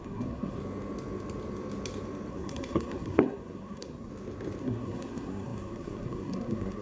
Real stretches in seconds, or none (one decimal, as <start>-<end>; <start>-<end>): 0.6-2.3; 4.1-4.6

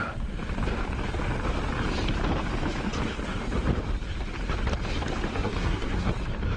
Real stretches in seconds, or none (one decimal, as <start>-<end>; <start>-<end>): 0.0-5.3; 6.1-6.6

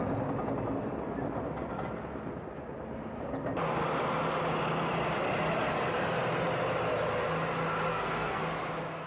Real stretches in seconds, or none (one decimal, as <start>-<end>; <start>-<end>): 0.0-7.9; 8.4-9.1

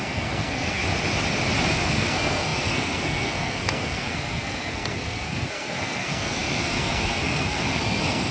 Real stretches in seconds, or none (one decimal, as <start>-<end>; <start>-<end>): 0.8-1.7

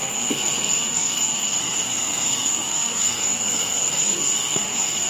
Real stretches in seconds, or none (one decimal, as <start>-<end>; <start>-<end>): none

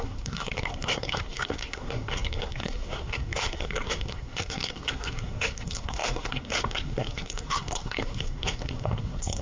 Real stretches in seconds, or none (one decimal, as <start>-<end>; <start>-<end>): none

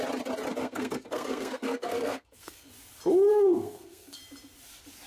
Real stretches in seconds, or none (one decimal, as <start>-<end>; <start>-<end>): 0.0-0.6; 2.7-3.3; 4.2-5.1

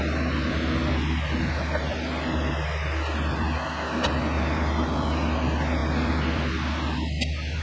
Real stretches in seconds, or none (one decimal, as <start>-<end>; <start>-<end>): 0.0-7.6